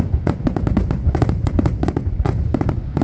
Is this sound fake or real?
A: fake